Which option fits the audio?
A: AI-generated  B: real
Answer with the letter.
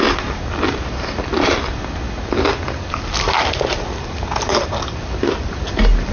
B